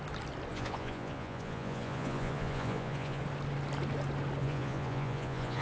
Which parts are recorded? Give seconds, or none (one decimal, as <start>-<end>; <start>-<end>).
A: 0.0-0.5; 3.2-4.4